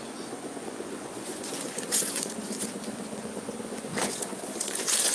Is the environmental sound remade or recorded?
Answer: remade